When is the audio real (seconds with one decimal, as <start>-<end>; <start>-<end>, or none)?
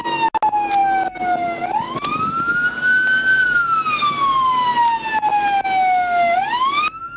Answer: 0.0-7.2